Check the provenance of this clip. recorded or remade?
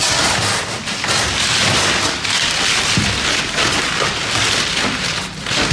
recorded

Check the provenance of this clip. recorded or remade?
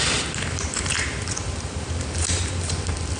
recorded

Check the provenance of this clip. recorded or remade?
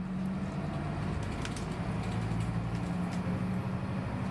recorded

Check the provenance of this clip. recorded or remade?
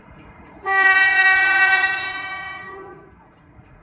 remade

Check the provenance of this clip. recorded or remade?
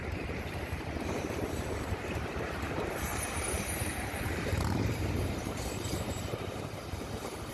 remade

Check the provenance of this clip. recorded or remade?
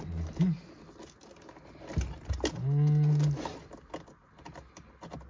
recorded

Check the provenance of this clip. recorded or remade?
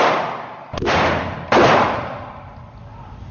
recorded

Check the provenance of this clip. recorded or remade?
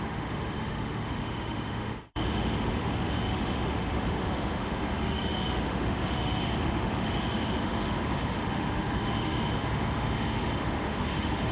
remade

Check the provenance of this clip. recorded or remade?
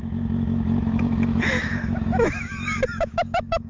remade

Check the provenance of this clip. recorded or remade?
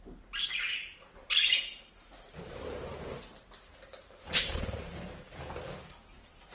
remade